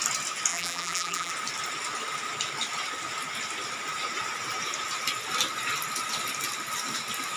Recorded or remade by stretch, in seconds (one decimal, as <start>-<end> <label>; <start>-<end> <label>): 0.0-0.5 recorded; 0.5-1.3 remade; 1.3-7.4 recorded